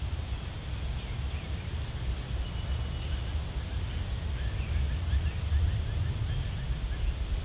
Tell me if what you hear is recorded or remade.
recorded